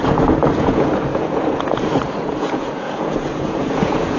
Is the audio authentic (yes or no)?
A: no